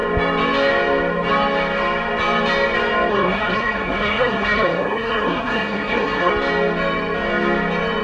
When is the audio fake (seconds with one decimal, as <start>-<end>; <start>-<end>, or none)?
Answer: 3.1-6.3